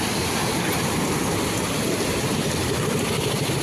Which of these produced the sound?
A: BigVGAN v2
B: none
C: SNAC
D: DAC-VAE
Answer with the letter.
B